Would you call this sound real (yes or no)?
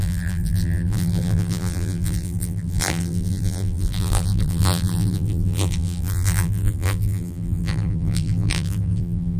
no